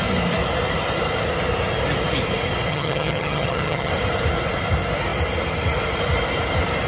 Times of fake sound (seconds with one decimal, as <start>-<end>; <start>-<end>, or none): 2.7-3.9